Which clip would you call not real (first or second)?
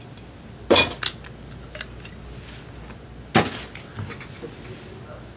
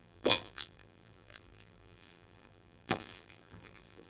second